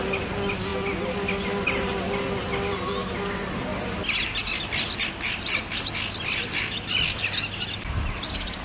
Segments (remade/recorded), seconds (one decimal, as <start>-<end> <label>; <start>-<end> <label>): 0.0-8.6 recorded